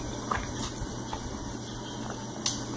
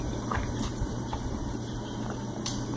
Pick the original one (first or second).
first